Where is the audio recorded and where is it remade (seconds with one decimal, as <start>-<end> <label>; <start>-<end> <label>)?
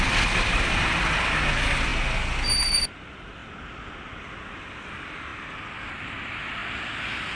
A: 0.0-1.9 remade; 1.9-2.6 recorded; 2.6-3.4 remade; 3.4-4.4 recorded; 4.4-5.3 remade; 5.3-5.9 recorded; 5.9-6.6 remade; 6.6-7.3 recorded